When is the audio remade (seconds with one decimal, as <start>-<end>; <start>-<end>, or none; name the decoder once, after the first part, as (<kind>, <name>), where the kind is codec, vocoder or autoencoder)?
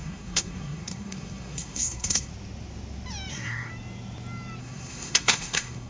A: 0.0-2.3 (codec, SNAC); 3.3-3.7; 4.6-5.9